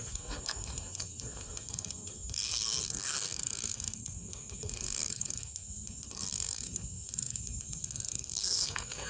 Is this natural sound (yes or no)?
no